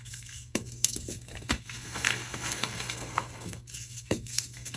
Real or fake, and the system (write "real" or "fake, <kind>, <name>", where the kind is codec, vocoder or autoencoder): fake, codec, SNAC